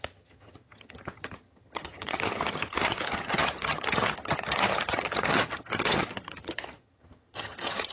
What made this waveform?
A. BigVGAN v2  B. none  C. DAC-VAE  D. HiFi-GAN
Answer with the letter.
D